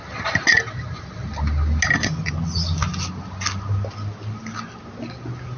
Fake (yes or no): no